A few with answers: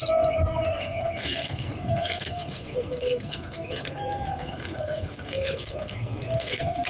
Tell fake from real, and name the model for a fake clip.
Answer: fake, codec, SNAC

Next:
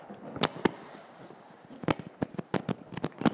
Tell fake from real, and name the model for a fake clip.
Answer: real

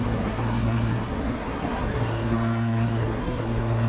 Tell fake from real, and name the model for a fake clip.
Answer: fake, codec, SNAC